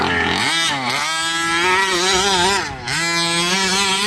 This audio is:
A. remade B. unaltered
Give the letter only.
B